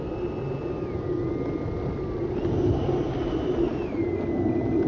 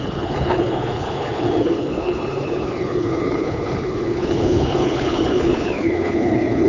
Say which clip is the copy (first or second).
second